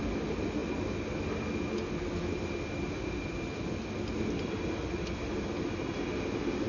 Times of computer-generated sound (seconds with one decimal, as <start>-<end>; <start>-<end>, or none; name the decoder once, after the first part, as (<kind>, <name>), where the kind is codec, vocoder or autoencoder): none